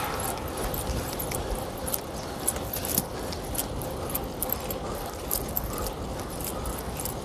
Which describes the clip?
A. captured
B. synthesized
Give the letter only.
A